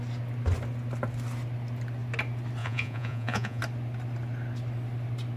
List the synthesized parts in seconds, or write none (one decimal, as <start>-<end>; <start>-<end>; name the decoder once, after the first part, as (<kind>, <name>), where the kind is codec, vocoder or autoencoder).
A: 2.6-3.6 (vocoder, Vocos)